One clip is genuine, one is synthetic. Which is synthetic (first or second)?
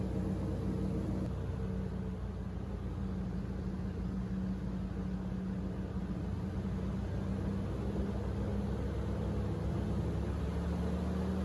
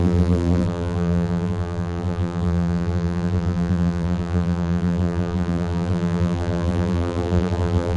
second